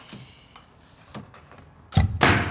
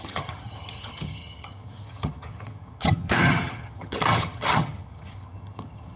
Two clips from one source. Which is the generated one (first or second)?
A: second